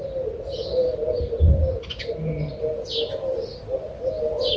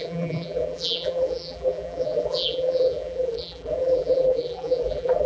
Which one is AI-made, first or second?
second